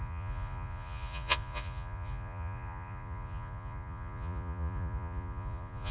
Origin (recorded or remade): remade